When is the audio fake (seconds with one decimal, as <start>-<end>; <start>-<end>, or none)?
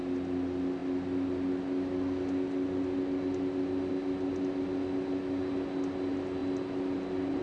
none